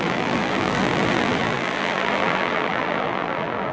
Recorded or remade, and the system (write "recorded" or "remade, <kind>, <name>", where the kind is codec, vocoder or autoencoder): remade, vocoder, BigVGAN v2